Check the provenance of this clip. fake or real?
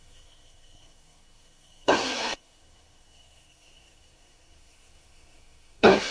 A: fake